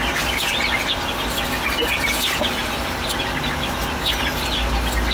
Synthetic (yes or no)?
no